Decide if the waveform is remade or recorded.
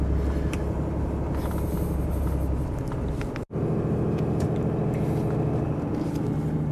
recorded